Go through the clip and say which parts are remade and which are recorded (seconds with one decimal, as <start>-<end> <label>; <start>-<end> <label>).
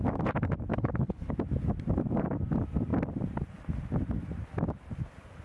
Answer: 0.0-0.7 recorded; 0.7-1.3 remade; 1.3-5.4 recorded